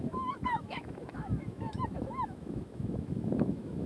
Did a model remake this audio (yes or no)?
yes